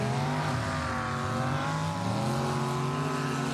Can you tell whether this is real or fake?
real